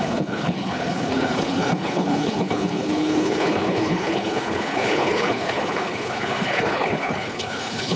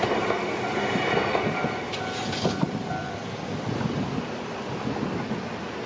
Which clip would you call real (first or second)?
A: second